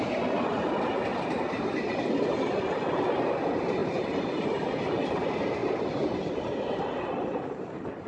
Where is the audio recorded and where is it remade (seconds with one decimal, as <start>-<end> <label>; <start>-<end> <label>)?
0.0-1.1 recorded; 1.1-1.9 remade; 1.9-3.8 recorded; 3.8-4.8 remade; 4.8-5.6 recorded; 5.6-8.1 remade